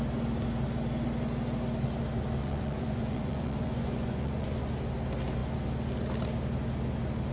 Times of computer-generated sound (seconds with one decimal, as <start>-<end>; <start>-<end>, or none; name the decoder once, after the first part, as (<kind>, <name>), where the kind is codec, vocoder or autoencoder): 2.4-4.7 (vocoder, Vocos)